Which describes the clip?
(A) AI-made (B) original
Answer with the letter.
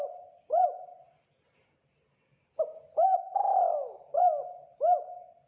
B